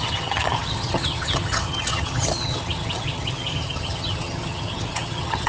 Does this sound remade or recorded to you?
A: remade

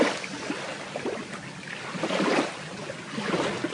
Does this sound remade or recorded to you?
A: recorded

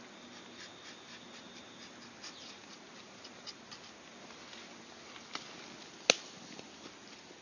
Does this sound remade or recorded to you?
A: recorded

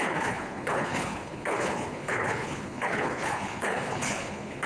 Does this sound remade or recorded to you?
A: remade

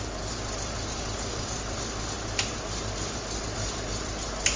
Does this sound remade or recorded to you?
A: recorded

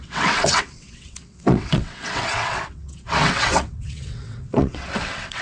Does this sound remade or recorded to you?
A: remade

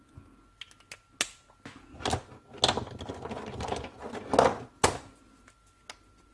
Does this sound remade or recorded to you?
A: recorded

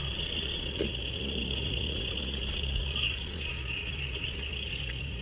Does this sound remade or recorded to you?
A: remade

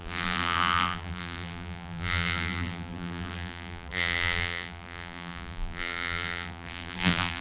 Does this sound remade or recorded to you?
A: remade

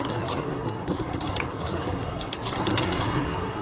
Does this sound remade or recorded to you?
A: remade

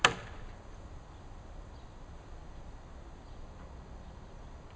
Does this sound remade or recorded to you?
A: recorded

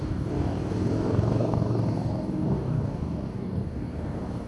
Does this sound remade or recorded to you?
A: remade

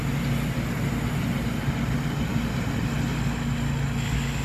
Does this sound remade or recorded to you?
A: recorded